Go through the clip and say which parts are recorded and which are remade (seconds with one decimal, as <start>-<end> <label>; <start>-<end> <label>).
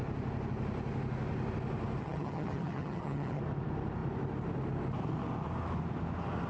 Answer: 0.0-2.0 recorded; 2.0-3.4 remade; 3.4-6.5 recorded